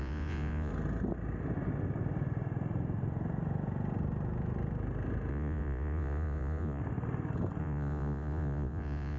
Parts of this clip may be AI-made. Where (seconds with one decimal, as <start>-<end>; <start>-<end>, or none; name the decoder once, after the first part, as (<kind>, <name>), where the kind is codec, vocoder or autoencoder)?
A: 0.0-0.7 (vocoder, Vocos); 5.3-6.8; 7.6-9.2